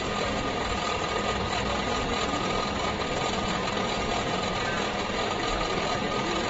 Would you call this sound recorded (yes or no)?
yes